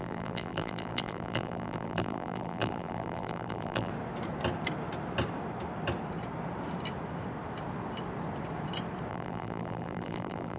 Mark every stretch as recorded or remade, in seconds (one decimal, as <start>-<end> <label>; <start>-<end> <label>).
0.0-3.9 remade; 3.9-9.1 recorded; 9.1-10.6 remade